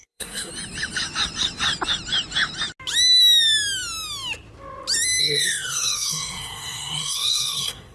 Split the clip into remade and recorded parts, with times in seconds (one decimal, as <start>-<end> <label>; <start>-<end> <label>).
0.0-0.5 remade; 0.5-5.2 recorded; 5.2-7.9 remade